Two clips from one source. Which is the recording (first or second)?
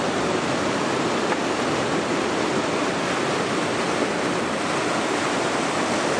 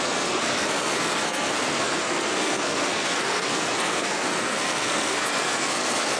first